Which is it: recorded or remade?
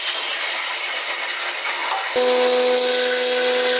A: recorded